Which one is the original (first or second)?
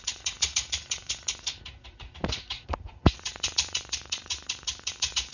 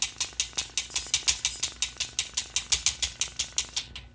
second